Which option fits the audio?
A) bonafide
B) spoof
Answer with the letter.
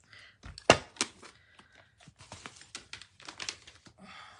A